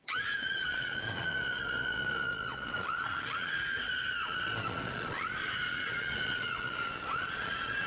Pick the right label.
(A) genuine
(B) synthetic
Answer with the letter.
B